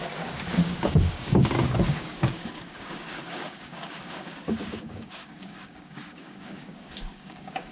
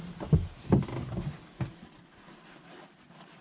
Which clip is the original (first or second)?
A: second